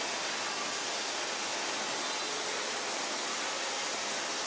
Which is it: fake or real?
real